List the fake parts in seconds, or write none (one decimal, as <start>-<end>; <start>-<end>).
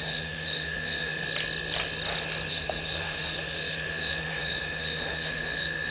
0.0-1.2; 2.5-5.9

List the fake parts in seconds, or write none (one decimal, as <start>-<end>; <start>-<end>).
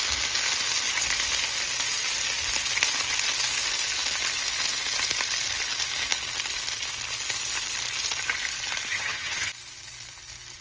8.9-9.5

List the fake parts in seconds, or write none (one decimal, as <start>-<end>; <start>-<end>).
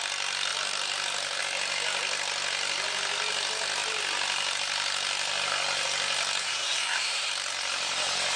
6.4-7.3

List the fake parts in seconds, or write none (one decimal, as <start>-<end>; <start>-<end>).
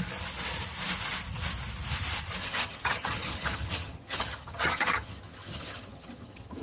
2.4-6.6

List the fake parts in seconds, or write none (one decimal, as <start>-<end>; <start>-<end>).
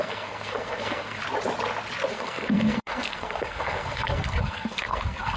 0.0-1.2; 2.1-5.4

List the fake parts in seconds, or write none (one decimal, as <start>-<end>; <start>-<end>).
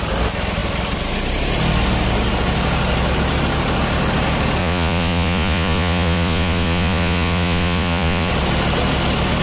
4.6-8.3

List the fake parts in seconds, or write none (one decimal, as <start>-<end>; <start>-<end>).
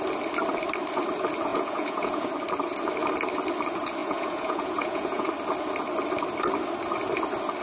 1.5-2.3; 4.0-5.3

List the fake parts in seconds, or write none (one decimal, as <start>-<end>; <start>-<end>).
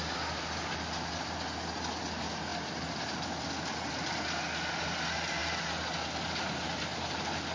none